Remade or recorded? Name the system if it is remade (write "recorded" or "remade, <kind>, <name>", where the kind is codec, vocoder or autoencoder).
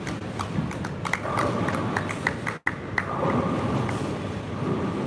recorded